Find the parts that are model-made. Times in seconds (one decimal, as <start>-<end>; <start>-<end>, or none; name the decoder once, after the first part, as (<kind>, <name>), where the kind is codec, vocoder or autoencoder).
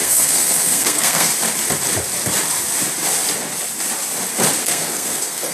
0.0-1.3 (codec, SNAC); 4.6-5.5